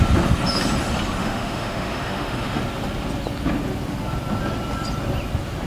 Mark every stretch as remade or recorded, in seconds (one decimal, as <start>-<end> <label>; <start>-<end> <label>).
0.0-1.2 recorded; 1.2-2.6 remade; 2.6-5.7 recorded